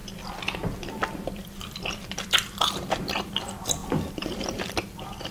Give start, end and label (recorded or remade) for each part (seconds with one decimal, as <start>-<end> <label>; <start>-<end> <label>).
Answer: 0.0-1.8 recorded; 1.8-5.3 remade